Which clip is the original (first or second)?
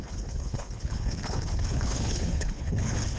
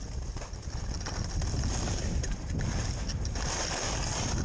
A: second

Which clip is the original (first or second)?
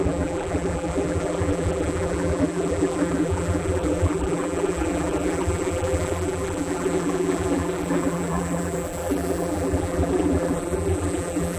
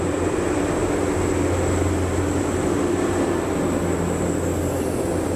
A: second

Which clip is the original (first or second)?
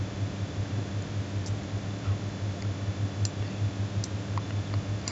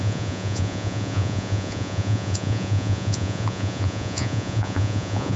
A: first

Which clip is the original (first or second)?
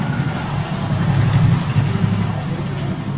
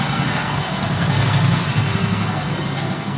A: first